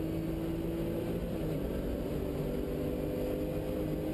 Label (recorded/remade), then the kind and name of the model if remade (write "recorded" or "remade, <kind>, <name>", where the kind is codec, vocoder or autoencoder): recorded